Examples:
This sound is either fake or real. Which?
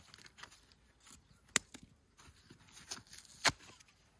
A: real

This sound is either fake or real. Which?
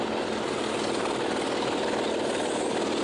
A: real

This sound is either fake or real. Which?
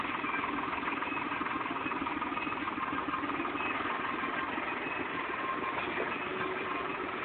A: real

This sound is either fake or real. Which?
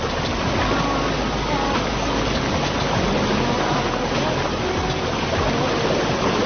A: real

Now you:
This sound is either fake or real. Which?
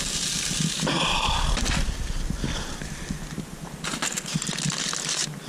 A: real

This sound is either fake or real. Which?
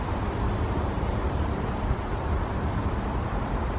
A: real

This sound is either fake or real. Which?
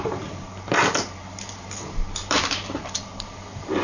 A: fake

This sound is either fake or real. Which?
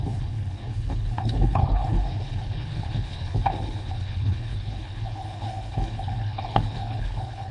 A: fake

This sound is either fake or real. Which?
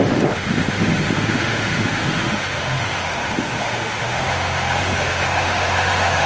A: fake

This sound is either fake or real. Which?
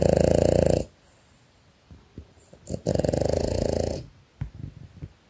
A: real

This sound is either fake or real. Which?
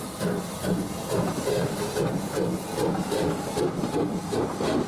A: real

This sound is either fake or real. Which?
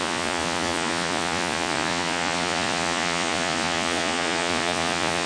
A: fake